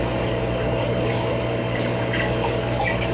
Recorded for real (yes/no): no